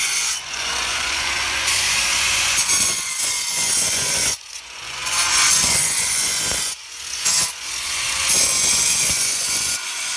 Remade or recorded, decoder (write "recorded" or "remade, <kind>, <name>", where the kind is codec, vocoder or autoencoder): remade, vocoder, Vocos